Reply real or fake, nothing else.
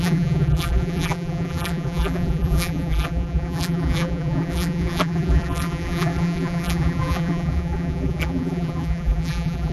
fake